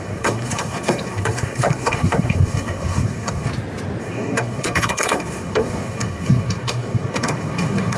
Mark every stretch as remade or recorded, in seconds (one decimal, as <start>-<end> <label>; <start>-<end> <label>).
0.0-3.5 remade; 3.5-4.0 recorded; 4.0-8.0 remade